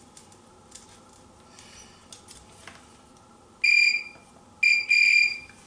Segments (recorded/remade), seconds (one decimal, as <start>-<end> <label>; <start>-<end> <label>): 0.0-5.7 recorded